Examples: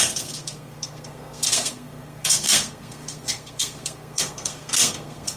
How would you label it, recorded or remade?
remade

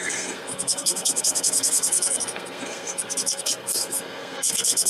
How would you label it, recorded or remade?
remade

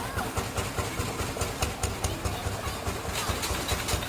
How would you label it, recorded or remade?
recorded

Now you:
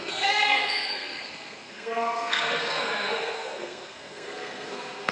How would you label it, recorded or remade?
remade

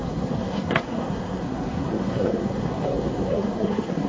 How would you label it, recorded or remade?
remade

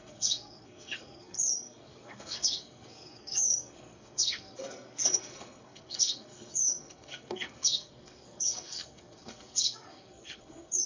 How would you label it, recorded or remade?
remade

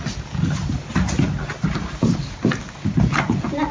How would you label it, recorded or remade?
recorded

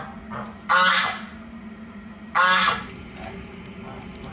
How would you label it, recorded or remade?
recorded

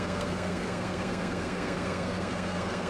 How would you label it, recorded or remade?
remade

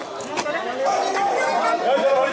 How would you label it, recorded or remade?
recorded